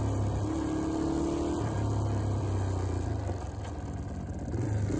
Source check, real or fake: real